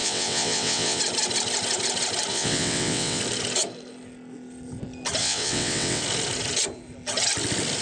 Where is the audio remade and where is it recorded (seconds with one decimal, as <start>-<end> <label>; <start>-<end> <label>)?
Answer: 0.0-1.0 remade; 1.0-2.3 recorded; 2.3-3.2 remade; 3.2-5.2 recorded; 5.2-6.0 remade; 6.0-7.8 recorded